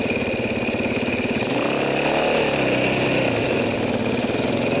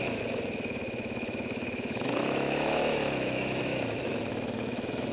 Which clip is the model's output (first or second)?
second